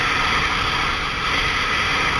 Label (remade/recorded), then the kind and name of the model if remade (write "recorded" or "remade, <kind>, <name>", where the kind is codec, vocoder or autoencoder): remade, vocoder, BigVGAN v2